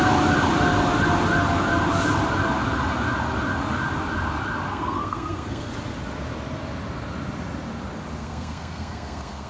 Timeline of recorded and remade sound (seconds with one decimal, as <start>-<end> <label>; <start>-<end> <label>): 0.0-4.7 recorded; 4.7-5.7 remade; 5.7-8.2 recorded; 8.2-9.5 remade